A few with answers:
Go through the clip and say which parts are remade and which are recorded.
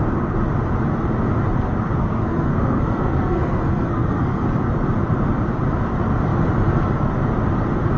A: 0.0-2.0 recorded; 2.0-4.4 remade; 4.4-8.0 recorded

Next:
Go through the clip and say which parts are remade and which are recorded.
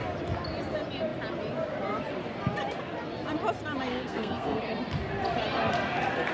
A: 0.0-3.9 recorded; 3.9-4.6 remade; 4.6-6.3 recorded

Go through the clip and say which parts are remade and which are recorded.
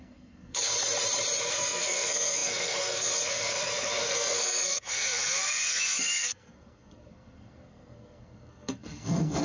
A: 0.0-0.7 remade; 0.7-1.4 recorded; 1.4-9.4 remade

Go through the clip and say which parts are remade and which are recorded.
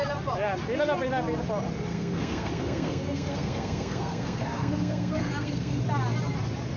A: 0.0-1.9 recorded; 1.9-5.8 remade; 5.8-6.8 recorded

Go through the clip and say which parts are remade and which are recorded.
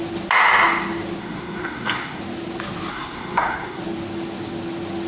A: 0.0-1.2 recorded; 1.2-2.2 remade; 2.2-2.9 recorded; 2.9-3.8 remade; 3.8-5.1 recorded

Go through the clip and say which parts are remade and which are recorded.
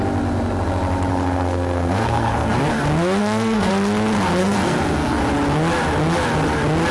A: 0.0-1.1 recorded; 1.1-2.6 remade; 2.6-3.2 recorded; 3.2-3.7 remade; 3.7-4.4 recorded; 4.4-5.2 remade; 5.2-6.9 recorded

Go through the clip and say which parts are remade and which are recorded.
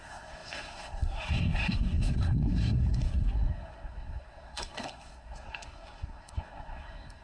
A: 0.0-7.2 remade